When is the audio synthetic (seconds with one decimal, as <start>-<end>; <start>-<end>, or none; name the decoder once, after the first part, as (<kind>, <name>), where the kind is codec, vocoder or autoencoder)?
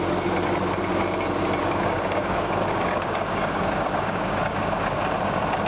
1.6-5.0 (codec, DAC)